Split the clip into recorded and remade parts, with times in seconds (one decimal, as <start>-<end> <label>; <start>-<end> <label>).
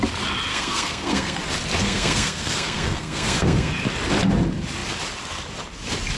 0.0-0.5 recorded; 0.5-1.4 remade; 1.4-1.8 recorded; 1.8-3.7 remade; 3.7-6.2 recorded